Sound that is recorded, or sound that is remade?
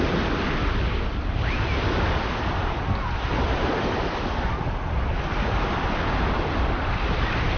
recorded